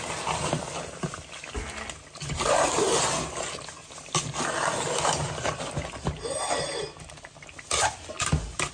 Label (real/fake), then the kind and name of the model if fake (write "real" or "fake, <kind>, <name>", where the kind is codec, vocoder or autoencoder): real